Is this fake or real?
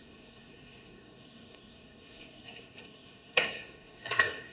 fake